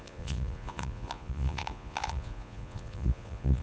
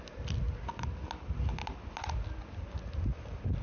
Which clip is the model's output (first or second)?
first